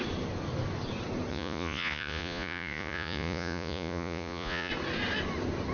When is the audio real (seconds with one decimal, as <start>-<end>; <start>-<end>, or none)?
0.0-1.3; 4.7-5.7